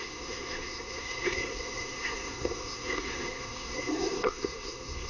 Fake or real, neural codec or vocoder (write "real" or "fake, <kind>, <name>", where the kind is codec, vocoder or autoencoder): fake, codec, SNAC